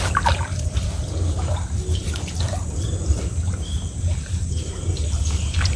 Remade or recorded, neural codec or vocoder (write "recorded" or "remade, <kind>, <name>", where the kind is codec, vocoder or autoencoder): recorded